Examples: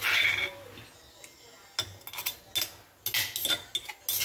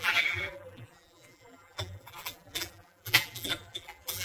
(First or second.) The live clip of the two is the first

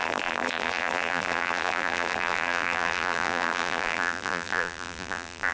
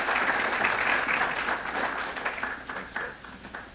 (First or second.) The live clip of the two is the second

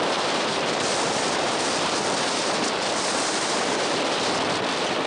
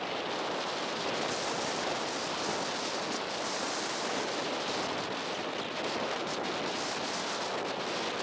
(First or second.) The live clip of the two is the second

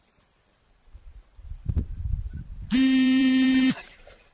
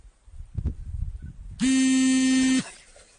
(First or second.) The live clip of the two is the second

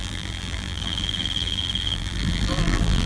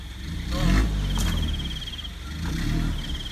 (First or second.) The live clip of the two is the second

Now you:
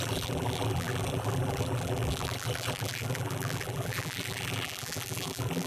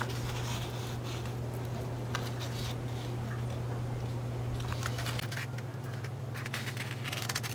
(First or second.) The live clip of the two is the second